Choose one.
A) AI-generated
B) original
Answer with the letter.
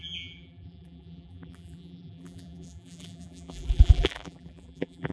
A